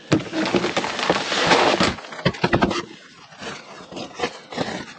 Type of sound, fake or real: real